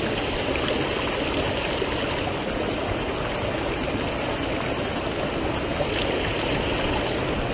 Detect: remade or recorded recorded